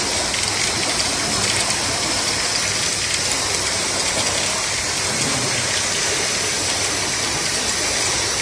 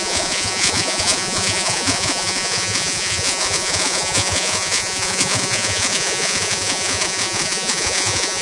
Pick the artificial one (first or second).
second